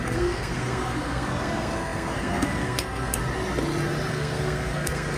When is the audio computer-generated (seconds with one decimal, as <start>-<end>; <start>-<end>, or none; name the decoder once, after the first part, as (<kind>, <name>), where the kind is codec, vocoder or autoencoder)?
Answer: 0.0-3.2 (codec, SNAC); 4.1-5.2